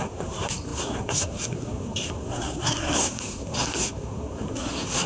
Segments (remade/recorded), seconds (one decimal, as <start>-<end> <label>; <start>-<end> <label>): 0.0-5.1 remade